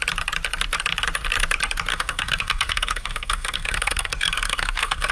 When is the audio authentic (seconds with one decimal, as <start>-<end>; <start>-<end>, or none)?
0.0-1.9